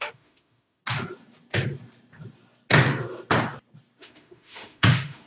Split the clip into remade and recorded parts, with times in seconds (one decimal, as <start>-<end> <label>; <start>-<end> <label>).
0.0-0.8 remade; 0.8-4.0 recorded; 4.0-5.3 remade